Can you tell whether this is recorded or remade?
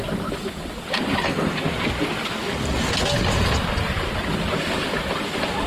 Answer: recorded